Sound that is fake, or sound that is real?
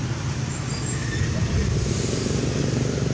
real